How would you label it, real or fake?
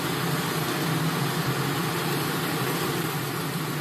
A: fake